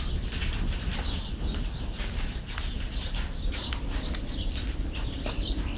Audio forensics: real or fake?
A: real